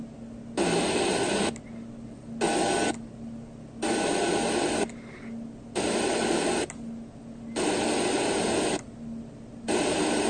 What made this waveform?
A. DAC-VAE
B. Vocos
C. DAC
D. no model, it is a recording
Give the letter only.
D